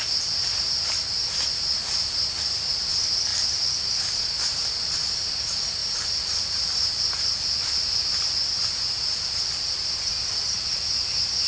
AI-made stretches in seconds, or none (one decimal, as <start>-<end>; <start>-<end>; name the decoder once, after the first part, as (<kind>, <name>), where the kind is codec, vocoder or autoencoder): none